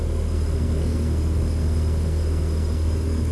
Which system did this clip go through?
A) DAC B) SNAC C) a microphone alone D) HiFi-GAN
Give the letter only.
B